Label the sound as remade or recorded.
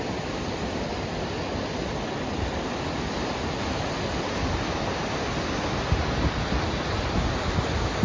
recorded